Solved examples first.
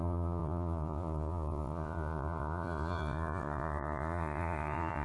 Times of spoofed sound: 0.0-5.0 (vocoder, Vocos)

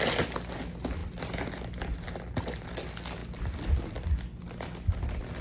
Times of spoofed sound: none